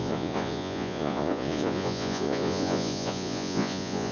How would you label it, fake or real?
fake